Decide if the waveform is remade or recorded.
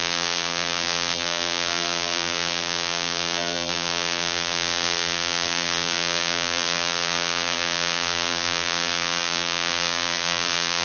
remade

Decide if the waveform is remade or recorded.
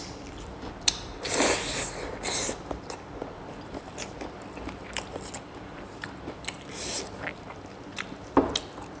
remade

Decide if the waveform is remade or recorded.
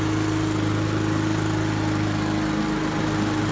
recorded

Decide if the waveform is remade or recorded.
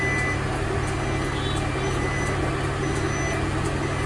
recorded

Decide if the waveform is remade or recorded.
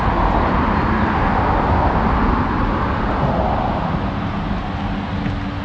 recorded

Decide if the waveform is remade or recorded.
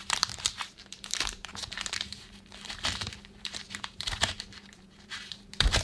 remade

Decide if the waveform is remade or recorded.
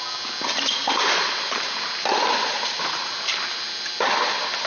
remade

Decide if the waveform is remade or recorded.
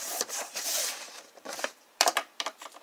remade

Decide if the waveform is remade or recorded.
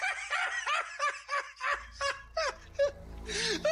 recorded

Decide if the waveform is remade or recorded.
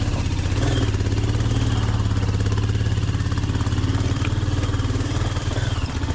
remade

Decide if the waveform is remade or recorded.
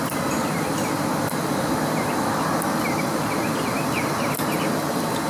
remade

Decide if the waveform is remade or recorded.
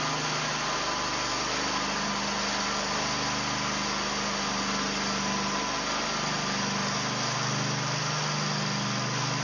recorded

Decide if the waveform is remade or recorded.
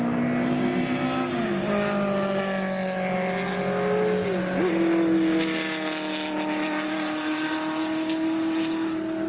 recorded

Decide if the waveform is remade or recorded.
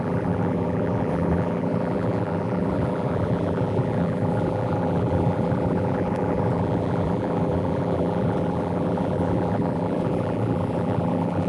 remade